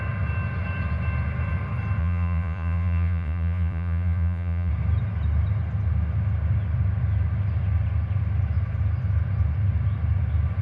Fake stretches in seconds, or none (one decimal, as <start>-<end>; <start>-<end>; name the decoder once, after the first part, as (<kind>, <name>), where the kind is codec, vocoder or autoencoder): 2.0-4.7 (vocoder, Vocos)